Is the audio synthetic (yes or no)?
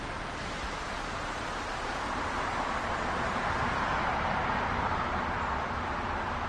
no